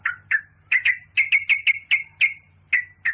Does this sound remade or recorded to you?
recorded